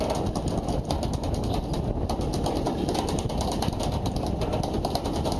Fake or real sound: real